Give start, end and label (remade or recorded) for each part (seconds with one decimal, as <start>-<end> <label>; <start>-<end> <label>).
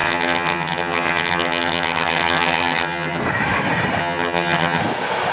0.0-3.2 remade; 3.2-4.0 recorded; 4.0-4.8 remade; 4.8-5.3 recorded